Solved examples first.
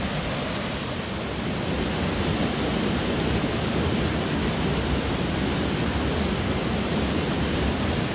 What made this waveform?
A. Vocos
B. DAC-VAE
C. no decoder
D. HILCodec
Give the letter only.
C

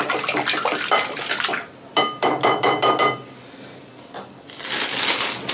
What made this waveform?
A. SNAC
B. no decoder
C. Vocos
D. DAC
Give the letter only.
B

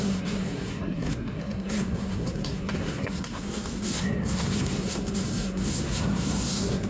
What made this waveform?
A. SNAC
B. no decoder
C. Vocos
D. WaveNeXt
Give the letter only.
A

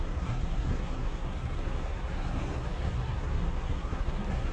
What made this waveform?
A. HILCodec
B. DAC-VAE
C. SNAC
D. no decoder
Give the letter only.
C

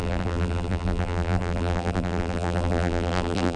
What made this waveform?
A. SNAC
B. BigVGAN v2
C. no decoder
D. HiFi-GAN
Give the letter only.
B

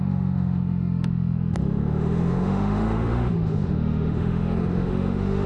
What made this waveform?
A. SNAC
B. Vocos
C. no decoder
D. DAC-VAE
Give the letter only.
D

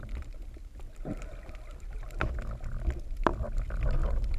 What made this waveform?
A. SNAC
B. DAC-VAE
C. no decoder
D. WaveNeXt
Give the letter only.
C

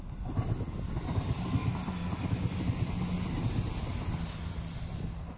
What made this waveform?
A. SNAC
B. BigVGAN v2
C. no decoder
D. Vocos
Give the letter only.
C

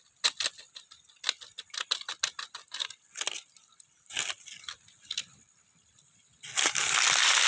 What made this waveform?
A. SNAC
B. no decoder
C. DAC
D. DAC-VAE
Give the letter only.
B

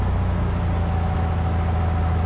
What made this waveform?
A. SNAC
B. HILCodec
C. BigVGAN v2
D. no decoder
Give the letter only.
D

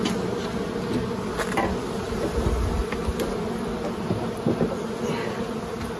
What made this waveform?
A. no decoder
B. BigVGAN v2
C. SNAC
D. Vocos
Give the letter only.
A